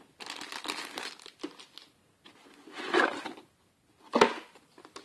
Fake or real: real